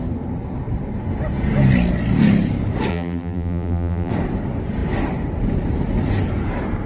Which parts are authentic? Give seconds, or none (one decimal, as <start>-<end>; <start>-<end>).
0.0-2.9; 4.1-6.9

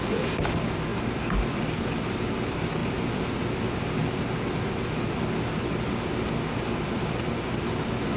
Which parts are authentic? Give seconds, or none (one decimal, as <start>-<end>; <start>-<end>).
0.0-8.2

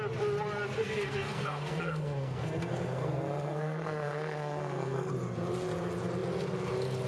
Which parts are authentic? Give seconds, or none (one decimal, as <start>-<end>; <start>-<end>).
0.0-0.8; 5.1-7.1

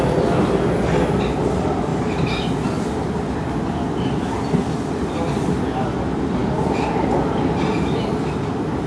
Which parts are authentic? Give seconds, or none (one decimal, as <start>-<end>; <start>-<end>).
0.0-8.9

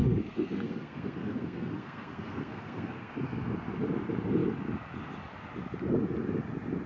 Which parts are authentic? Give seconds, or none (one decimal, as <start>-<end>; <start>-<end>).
3.1-6.9